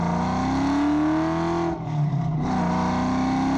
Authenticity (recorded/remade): recorded